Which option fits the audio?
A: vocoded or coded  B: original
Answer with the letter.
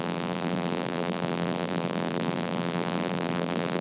A